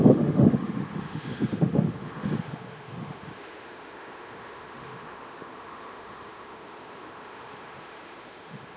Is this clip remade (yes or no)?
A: yes